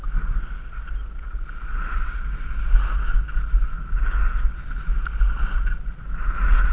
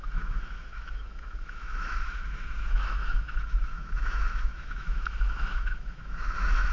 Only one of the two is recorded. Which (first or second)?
first